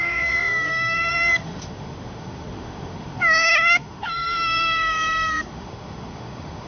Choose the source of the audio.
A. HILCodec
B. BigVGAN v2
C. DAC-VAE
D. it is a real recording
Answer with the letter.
C